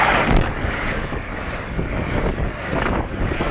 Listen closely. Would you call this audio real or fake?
fake